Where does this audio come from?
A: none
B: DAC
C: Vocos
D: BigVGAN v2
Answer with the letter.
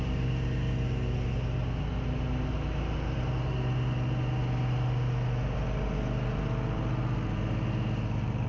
A